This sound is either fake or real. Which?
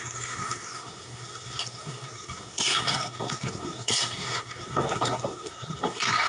fake